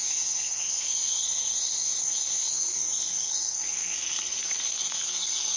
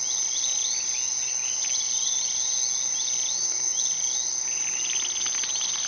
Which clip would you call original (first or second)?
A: second